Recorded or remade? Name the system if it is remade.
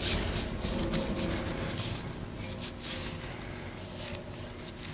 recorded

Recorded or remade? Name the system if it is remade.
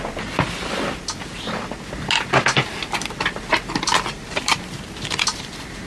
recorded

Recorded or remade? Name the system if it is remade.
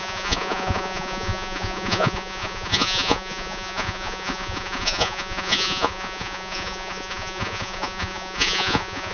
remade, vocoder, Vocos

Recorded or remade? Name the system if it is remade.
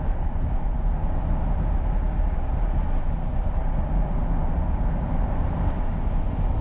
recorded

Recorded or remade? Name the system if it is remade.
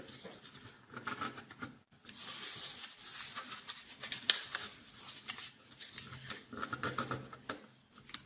recorded